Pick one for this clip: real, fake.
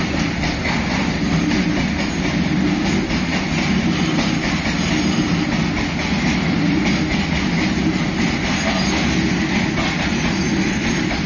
real